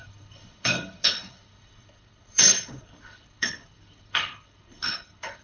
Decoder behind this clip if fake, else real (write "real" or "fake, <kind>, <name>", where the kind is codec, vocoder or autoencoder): fake, codec, HILCodec